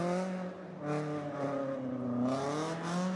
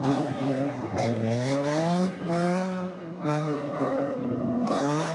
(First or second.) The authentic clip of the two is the first